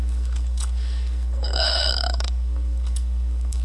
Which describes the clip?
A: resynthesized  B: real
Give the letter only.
A